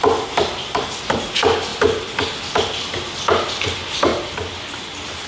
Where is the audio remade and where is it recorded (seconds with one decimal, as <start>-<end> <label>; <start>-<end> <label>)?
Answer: 0.0-5.3 recorded

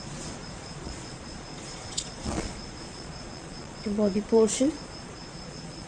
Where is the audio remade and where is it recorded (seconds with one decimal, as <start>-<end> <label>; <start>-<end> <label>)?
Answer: 0.0-5.9 remade